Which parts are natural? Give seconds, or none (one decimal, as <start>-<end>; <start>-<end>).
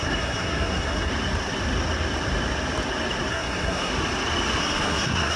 1.1-3.3; 3.9-4.6